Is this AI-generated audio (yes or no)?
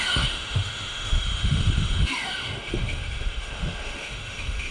yes